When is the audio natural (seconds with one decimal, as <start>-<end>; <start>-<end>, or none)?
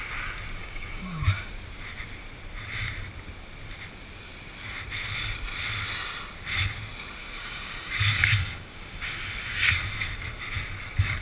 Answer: 0.0-0.6; 1.5-7.2; 9.8-11.2